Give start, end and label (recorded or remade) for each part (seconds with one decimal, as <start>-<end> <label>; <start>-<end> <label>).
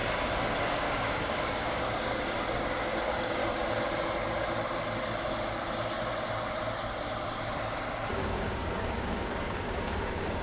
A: 0.0-0.7 recorded; 0.7-3.4 remade; 3.4-8.1 recorded; 8.1-10.4 remade